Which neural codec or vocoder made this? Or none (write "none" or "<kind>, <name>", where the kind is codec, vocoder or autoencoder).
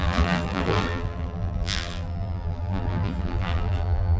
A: vocoder, BigVGAN v2